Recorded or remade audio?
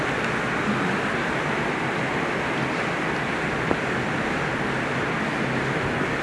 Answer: recorded